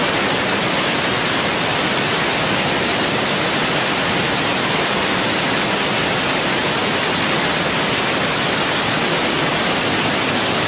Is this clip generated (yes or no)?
no